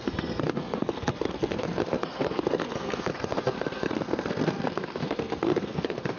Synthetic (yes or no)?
yes